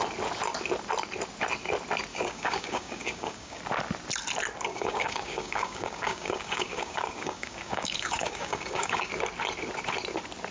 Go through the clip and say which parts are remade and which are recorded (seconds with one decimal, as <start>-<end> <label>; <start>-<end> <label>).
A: 0.0-2.1 recorded; 2.1-3.6 remade; 3.6-4.7 recorded; 4.7-9.1 remade; 9.1-10.5 recorded